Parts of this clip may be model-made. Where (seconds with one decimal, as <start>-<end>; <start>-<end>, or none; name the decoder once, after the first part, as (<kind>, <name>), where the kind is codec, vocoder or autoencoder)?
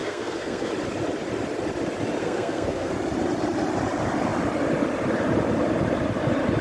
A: 0.0-0.7 (codec, SNAC); 2.2-2.9